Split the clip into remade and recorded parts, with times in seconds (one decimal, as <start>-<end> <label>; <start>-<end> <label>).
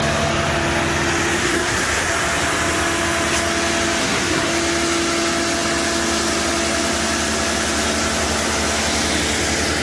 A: 0.0-1.4 recorded; 1.4-2.1 remade; 2.1-4.0 recorded; 4.0-4.5 remade; 4.5-9.8 recorded